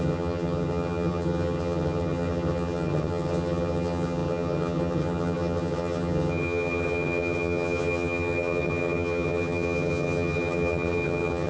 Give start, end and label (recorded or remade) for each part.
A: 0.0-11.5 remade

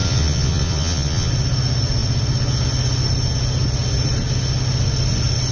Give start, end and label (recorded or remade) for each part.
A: 0.0-1.3 remade; 1.3-5.5 recorded

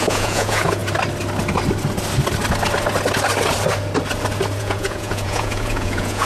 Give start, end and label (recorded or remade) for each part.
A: 0.0-0.8 remade; 0.8-4.6 recorded; 4.6-6.3 remade

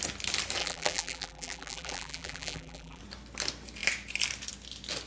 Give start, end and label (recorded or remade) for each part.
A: 0.0-0.6 recorded; 0.6-3.0 remade; 3.0-5.1 recorded